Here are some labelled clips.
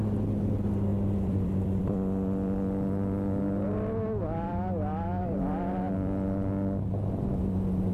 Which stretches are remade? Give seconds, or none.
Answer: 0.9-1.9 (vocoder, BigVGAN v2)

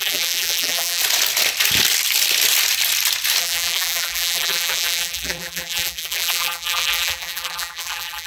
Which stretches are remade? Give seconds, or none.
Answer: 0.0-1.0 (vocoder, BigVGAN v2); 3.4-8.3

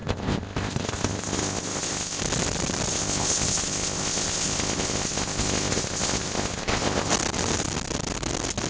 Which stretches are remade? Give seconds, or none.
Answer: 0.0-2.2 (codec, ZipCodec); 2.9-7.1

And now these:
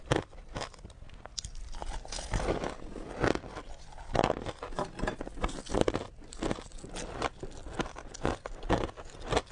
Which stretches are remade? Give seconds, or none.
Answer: none